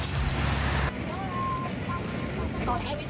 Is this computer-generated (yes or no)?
no